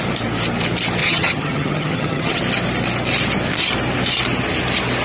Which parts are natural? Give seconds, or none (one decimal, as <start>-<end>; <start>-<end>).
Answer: 0.0-1.0; 2.4-5.0

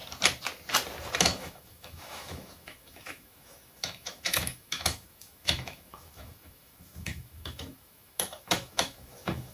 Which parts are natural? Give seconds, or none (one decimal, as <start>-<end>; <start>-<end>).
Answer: 0.0-1.2

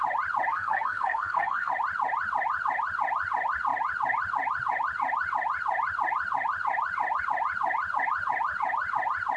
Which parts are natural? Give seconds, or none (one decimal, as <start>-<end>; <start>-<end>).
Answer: 0.0-0.5; 1.7-9.4

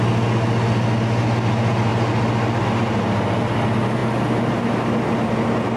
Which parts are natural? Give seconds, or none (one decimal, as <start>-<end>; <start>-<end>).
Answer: 0.0-5.8

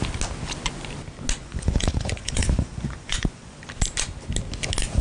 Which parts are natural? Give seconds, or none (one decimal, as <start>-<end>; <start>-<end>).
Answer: 0.0-1.4; 3.6-5.0

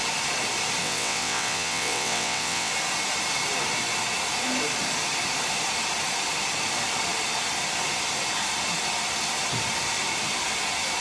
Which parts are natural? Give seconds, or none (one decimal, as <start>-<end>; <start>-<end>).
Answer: 0.0-0.8; 2.7-11.0

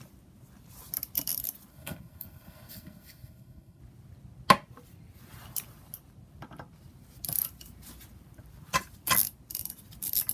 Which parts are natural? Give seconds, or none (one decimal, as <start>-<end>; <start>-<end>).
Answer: 0.0-1.7; 3.8-10.3

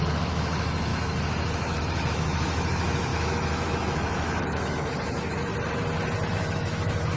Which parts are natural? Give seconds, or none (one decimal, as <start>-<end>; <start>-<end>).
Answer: 5.5-6.3